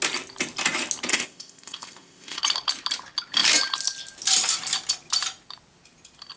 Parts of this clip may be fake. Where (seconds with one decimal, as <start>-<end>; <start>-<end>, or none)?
1.1-2.4